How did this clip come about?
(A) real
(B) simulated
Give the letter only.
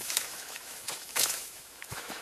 B